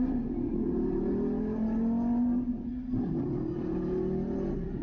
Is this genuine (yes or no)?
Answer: yes